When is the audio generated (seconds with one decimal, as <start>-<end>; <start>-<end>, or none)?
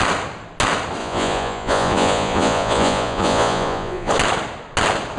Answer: 1.0-4.1